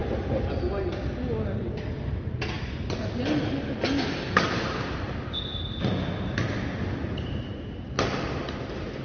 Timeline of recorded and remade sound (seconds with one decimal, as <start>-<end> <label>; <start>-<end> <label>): 0.0-9.0 recorded